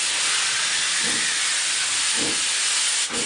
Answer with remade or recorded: recorded